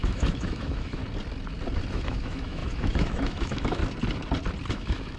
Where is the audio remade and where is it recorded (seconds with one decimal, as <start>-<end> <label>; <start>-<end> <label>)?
0.0-1.0 remade; 1.0-1.9 recorded; 1.9-3.8 remade; 3.8-4.7 recorded; 4.7-5.2 remade